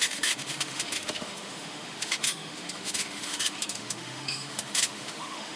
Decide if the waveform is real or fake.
fake